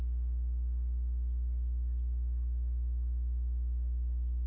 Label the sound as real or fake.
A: real